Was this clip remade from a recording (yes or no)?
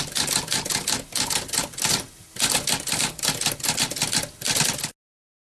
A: no